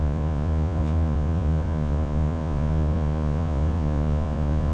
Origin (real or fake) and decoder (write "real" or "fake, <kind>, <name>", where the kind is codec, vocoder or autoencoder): fake, vocoder, Vocos